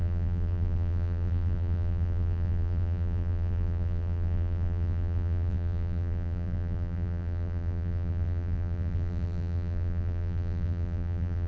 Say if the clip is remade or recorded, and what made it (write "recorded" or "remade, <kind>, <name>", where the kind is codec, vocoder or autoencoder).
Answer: remade, vocoder, BigVGAN v2